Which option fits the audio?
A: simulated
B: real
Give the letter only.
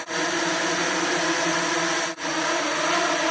B